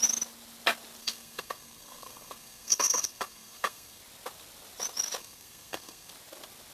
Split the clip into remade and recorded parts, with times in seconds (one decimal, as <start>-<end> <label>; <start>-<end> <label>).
0.0-1.0 recorded; 1.0-4.0 remade; 4.0-5.2 recorded; 5.2-6.1 remade; 6.1-6.7 recorded